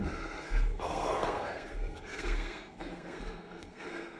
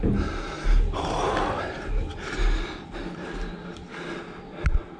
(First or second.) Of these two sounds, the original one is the second